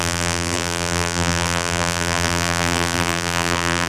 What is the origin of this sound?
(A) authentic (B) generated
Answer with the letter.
B